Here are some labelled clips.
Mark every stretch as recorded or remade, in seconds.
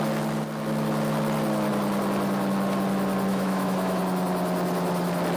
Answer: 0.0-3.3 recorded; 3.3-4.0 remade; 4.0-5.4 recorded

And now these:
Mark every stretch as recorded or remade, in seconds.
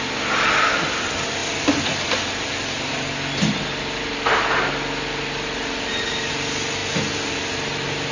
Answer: 0.0-8.1 recorded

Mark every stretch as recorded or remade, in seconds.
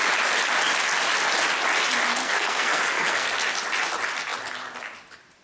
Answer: 0.0-2.2 recorded; 2.2-3.3 remade; 3.3-5.4 recorded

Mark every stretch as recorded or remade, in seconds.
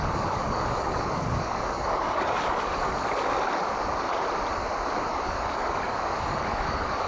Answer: 0.0-2.9 remade; 2.9-5.1 recorded; 5.1-7.1 remade